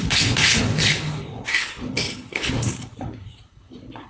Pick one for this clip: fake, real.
fake